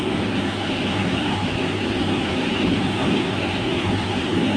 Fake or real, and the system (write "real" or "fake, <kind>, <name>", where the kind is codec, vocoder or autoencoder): fake, codec, SNAC